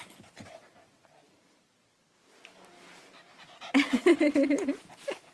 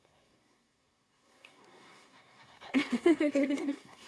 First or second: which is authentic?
first